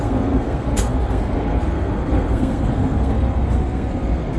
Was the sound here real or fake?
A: fake